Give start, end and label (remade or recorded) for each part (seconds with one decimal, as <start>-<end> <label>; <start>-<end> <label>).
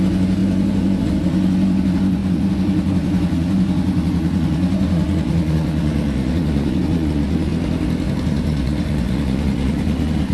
0.0-7.5 remade; 7.5-8.1 recorded; 8.1-10.3 remade